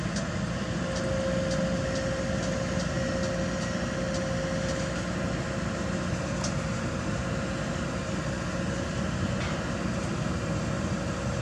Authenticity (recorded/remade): recorded